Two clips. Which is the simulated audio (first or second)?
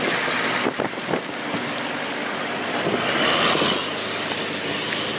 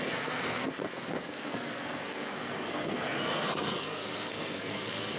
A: second